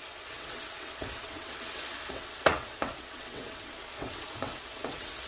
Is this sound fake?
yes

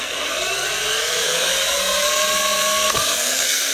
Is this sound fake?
yes